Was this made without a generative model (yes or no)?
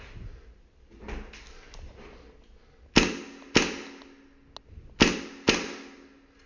yes